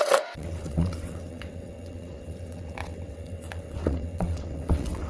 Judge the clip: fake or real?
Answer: fake